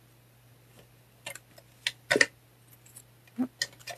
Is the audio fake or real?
real